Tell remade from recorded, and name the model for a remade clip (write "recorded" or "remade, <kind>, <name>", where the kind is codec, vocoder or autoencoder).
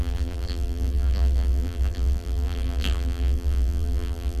remade, vocoder, BigVGAN v2